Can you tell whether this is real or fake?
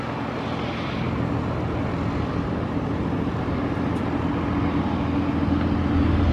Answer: real